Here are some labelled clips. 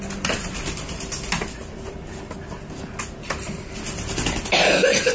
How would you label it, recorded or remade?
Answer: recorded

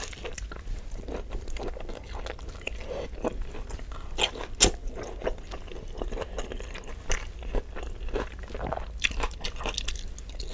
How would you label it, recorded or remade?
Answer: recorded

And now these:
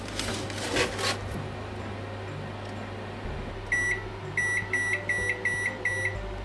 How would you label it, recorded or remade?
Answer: recorded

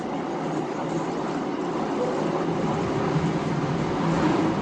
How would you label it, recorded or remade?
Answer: recorded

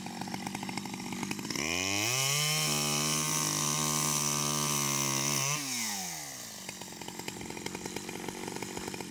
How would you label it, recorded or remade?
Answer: recorded